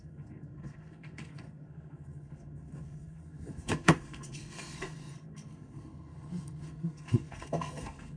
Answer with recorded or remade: remade